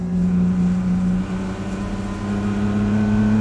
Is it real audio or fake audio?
real